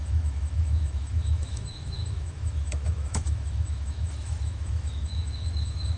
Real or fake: fake